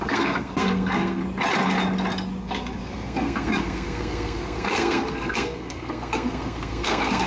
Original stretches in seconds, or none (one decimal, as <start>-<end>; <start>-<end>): 1.2-2.4